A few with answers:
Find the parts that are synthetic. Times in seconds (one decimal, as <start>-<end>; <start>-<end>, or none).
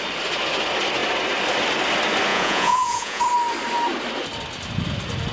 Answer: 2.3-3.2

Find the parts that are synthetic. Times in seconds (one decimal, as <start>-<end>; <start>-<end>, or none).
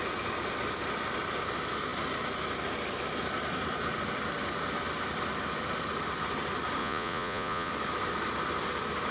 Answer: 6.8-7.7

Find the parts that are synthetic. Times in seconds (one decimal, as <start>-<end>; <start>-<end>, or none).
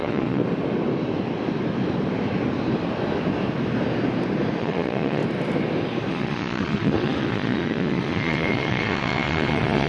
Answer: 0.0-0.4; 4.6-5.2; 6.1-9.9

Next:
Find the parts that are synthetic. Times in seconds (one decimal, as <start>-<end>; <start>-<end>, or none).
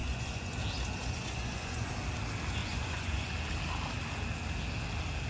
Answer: 0.0-0.6; 1.0-1.9; 2.6-3.3